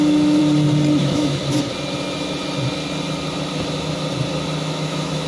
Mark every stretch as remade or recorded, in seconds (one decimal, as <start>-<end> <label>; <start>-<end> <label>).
0.0-0.4 remade; 0.4-1.0 recorded; 1.0-1.4 remade; 1.4-4.6 recorded; 4.6-5.3 remade